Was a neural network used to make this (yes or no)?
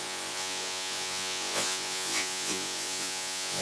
yes